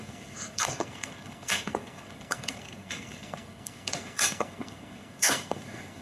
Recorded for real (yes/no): no